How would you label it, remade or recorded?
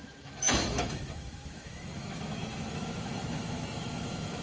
remade